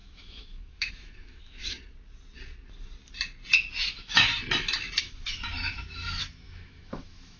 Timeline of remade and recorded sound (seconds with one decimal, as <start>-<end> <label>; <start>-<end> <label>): 0.0-1.8 remade; 1.8-3.9 recorded; 3.9-4.3 remade; 4.3-5.0 recorded; 5.0-7.4 remade